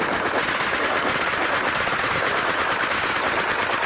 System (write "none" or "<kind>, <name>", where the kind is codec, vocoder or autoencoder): none